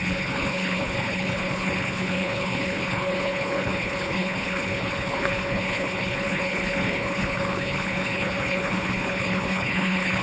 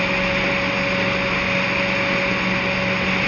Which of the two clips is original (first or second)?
second